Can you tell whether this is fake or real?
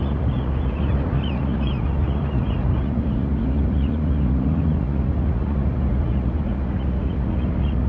fake